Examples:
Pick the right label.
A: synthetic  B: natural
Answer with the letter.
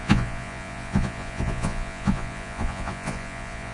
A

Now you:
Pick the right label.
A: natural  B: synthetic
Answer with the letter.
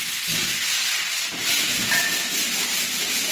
A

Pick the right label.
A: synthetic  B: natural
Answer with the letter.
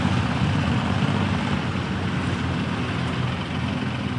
B